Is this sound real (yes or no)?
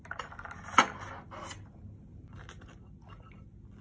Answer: yes